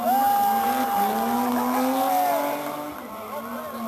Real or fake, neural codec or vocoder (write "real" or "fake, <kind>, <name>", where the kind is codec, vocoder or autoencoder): real